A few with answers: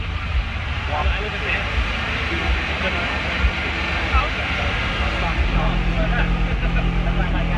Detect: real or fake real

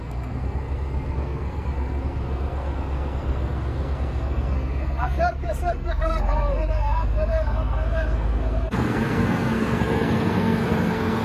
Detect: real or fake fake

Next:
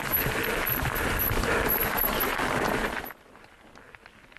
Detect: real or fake real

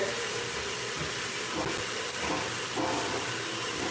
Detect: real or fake real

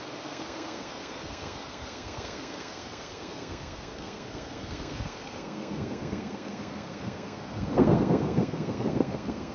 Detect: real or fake fake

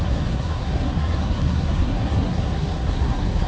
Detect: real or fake fake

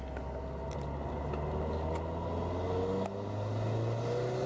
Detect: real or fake real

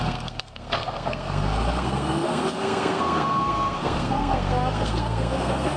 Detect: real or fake fake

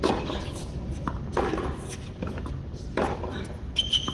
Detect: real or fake real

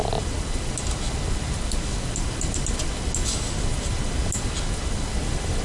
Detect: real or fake real